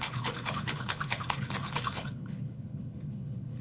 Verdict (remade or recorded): remade